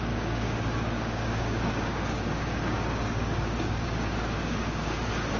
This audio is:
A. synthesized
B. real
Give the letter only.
A